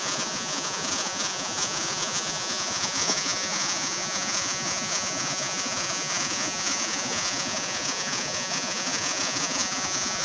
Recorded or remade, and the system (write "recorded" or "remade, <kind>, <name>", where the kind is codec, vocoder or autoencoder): remade, vocoder, Vocos